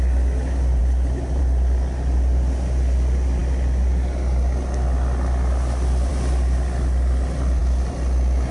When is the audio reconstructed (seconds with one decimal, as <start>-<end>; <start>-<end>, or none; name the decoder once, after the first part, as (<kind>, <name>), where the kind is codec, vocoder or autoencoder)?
none